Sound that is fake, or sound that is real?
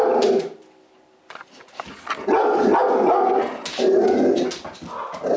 real